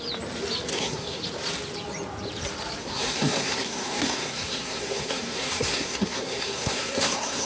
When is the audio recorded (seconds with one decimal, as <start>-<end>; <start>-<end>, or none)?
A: 0.0-0.7; 1.2-2.8